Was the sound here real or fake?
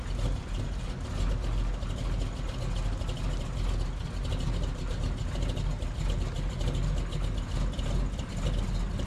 real